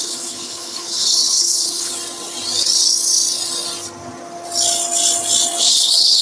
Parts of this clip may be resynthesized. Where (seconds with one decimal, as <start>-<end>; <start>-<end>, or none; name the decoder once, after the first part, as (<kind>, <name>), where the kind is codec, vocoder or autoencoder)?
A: 0.0-1.9 (codec, HILCodec); 5.6-6.2